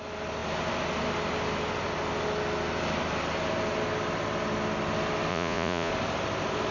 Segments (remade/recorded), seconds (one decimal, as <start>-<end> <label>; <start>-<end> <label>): 0.0-5.3 recorded; 5.3-5.9 remade; 5.9-6.7 recorded